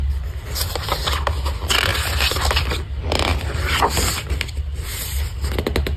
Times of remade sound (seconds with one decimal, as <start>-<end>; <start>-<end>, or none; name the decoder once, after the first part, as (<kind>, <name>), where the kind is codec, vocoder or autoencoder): 1.9-2.4 (vocoder, BigVGAN v2); 3.3-5.2